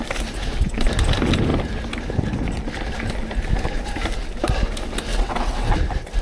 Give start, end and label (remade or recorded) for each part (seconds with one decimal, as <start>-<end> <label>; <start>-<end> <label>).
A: 0.0-5.1 recorded; 5.1-5.7 remade; 5.7-6.2 recorded